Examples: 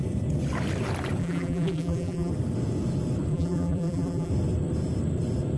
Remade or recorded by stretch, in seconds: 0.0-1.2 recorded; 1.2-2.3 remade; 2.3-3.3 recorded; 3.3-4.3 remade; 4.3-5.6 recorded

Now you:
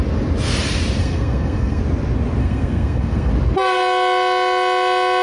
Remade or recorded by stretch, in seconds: 0.0-1.0 recorded; 1.0-1.8 remade; 1.8-2.4 recorded; 2.4-3.3 remade; 3.3-5.2 recorded

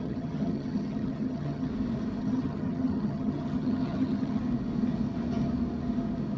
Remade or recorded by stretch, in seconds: 0.0-1.7 remade; 1.7-2.2 recorded; 2.2-4.4 remade; 4.4-6.4 recorded

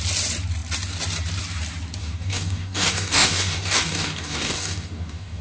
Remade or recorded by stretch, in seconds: 0.0-2.0 recorded; 2.0-5.4 remade

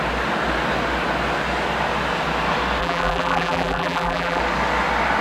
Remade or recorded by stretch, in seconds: 0.0-2.8 recorded; 2.8-4.4 remade; 4.4-5.2 recorded

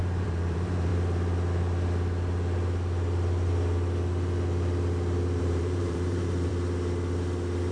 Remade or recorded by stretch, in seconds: 0.0-0.9 remade; 0.9-5.4 recorded; 5.4-6.5 remade; 6.5-7.7 recorded

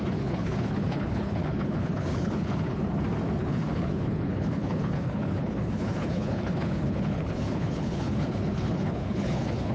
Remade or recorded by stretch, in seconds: 0.0-2.8 remade; 2.8-3.4 recorded; 3.4-9.7 remade

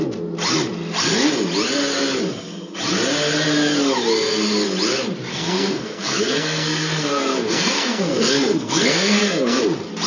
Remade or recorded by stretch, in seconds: 0.0-5.3 recorded; 5.3-9.6 remade; 9.6-10.1 recorded